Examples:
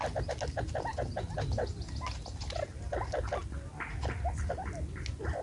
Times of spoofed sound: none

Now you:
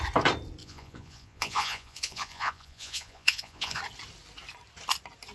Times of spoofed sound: 0.6-3.8 (vocoder, Vocos)

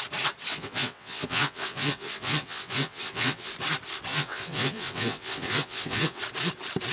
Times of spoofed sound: 0.5-3.5 (vocoder, WaveNeXt); 4.1-6.2

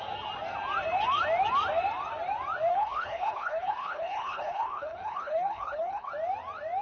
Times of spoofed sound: 2.7-6.1 (codec, HILCodec)

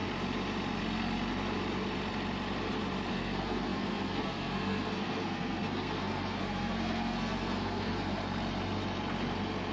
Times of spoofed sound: 3.1-8.2 (codec, SNAC)